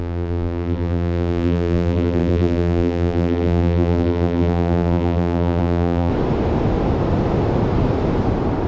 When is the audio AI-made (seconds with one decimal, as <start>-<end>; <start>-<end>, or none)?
0.0-6.1

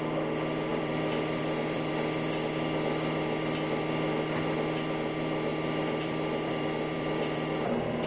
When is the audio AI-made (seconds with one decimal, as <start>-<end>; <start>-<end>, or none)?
0.7-1.9; 5.5-8.1

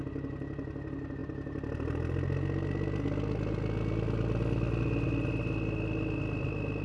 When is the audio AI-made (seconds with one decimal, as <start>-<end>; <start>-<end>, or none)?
none

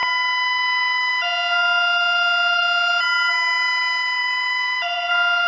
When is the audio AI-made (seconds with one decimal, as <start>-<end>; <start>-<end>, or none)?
4.2-5.1

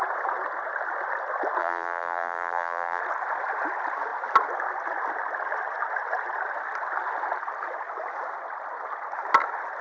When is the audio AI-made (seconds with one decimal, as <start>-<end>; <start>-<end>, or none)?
1.6-3.0

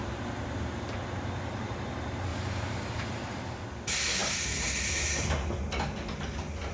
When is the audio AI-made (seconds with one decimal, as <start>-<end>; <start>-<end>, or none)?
0.0-0.9; 2.3-3.6